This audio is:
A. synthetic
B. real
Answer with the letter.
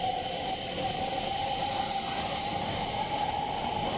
B